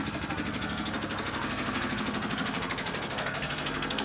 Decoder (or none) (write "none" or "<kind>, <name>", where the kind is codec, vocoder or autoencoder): codec, SNAC